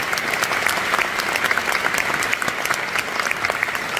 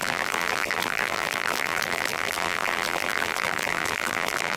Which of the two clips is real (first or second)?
first